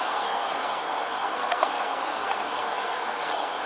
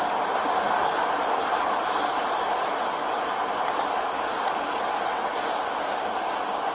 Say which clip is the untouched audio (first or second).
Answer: second